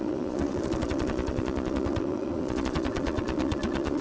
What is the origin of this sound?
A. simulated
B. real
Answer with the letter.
A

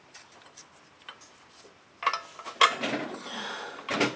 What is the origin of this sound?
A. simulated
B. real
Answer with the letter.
B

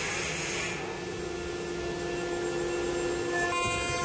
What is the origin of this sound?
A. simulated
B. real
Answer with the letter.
B